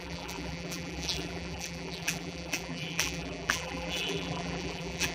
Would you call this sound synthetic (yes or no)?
yes